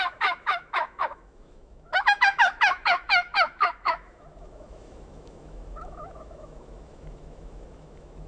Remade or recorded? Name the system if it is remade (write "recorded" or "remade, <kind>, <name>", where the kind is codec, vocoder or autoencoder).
remade, autoencoder, DAC-VAE